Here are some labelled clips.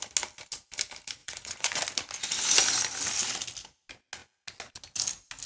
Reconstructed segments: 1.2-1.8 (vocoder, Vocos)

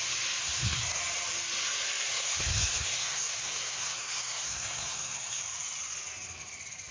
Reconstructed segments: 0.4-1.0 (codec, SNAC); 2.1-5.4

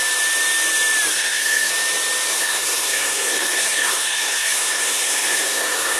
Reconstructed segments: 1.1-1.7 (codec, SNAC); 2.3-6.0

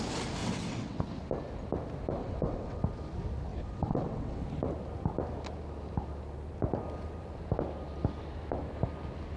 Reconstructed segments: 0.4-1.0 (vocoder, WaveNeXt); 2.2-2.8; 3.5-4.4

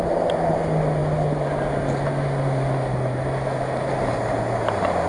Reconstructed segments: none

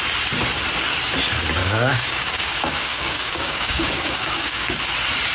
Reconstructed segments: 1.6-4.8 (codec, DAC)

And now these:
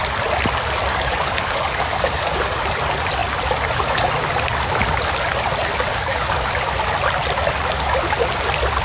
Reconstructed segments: 0.9-2.7 (codec, DAC); 5.9-6.5